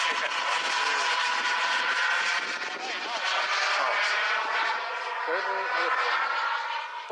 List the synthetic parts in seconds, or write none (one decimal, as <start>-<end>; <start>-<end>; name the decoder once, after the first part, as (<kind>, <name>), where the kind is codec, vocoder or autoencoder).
none